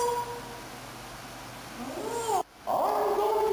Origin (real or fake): real